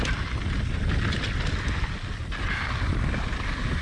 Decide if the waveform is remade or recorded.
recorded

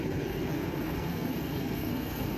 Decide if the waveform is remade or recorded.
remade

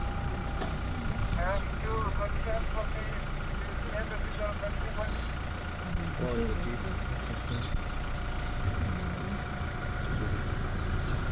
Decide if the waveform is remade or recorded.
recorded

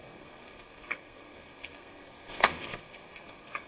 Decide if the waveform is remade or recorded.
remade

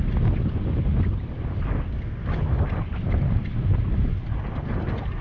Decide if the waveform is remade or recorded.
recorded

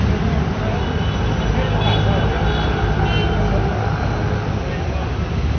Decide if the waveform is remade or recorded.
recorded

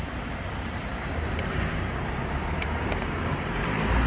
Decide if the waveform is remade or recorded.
remade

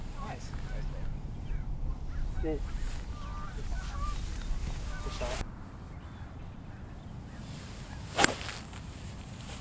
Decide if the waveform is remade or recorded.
recorded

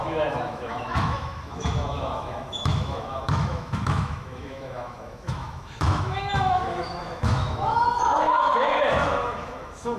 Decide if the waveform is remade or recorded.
remade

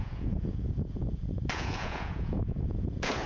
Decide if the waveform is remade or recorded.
remade